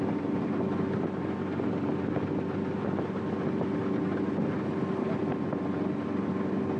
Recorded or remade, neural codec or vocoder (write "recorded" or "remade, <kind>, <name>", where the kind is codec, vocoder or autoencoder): recorded